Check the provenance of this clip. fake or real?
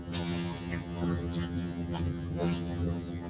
fake